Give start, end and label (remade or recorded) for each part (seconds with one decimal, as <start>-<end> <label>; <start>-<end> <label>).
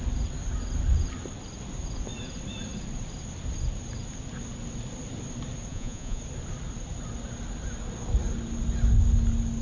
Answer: 0.0-5.7 recorded; 5.7-6.2 remade; 6.2-9.6 recorded